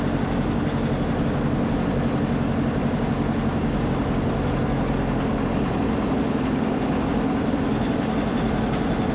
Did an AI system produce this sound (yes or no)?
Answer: no